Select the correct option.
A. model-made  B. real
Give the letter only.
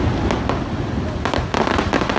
B